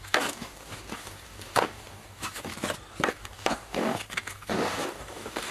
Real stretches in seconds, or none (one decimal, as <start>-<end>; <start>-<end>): 2.5-3.1